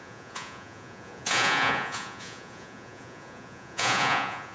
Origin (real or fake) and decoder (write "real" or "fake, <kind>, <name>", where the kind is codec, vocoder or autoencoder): fake, vocoder, Vocos